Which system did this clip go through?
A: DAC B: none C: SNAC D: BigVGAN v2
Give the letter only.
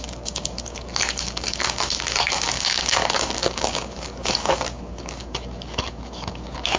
A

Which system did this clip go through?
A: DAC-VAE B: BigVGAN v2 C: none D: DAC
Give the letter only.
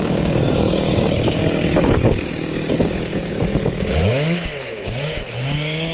D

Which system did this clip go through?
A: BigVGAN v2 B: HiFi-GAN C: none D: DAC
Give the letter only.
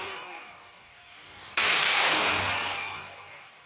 D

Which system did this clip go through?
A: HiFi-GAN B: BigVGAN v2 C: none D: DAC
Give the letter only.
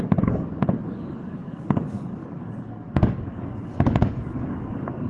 D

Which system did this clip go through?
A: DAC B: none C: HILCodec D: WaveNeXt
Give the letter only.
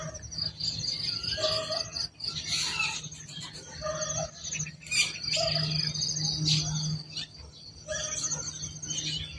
B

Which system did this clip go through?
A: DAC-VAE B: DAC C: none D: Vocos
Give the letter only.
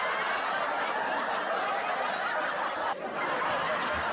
C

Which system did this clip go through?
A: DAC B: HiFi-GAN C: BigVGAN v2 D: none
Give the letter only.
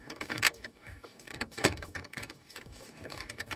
A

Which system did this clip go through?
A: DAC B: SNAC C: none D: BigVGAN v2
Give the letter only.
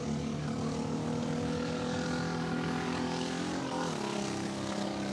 A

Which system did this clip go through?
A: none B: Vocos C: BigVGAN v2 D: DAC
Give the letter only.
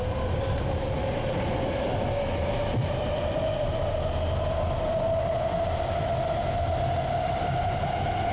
A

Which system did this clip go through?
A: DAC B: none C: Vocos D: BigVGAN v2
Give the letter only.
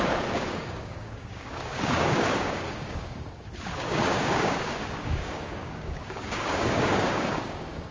A